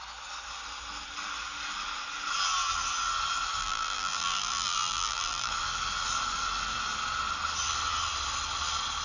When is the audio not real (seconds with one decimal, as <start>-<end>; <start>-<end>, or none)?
3.6-5.5